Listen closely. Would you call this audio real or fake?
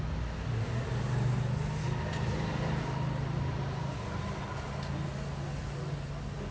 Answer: real